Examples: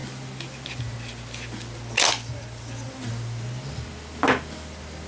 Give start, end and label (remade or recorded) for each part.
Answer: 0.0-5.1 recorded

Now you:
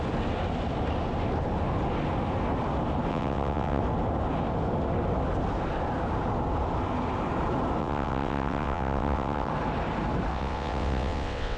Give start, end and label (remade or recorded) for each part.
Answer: 0.0-3.1 recorded; 3.1-3.8 remade; 3.8-7.8 recorded; 7.8-9.5 remade; 9.5-10.3 recorded; 10.3-11.6 remade

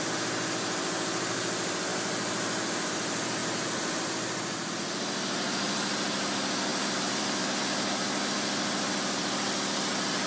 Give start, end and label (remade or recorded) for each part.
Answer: 0.0-1.9 recorded; 1.9-2.9 remade; 2.9-3.4 recorded; 3.4-4.7 remade; 4.7-6.7 recorded; 6.7-7.4 remade; 7.4-10.3 recorded

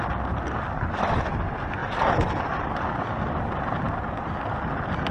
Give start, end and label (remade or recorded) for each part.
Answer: 0.0-5.1 recorded

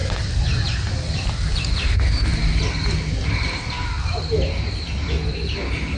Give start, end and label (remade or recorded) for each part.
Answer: 0.0-6.0 recorded

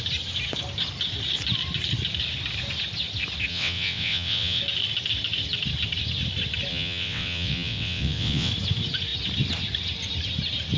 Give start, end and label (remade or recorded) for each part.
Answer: 0.0-3.5 recorded; 3.5-4.6 remade; 4.6-6.7 recorded; 6.7-8.5 remade; 8.5-10.8 recorded

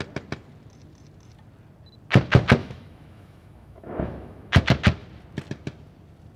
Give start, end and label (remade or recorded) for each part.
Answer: 0.0-2.6 recorded; 2.6-4.6 remade; 4.6-6.4 recorded